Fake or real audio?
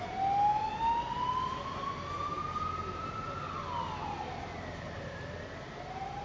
real